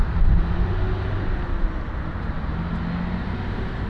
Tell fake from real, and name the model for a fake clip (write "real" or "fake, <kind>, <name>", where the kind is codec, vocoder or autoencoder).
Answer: real